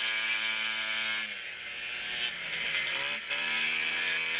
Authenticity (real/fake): real